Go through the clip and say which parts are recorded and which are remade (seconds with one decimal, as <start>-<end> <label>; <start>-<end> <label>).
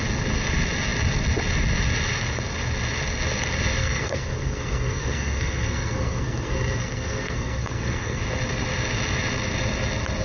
0.0-3.8 recorded; 3.8-8.2 remade; 8.2-10.2 recorded